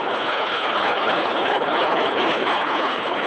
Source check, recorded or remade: remade